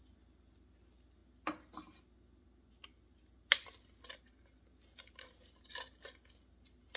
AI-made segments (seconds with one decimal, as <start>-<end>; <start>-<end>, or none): none